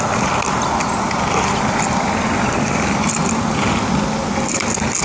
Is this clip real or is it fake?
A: real